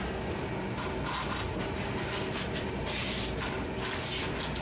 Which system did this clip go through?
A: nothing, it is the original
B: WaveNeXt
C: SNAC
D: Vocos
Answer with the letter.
A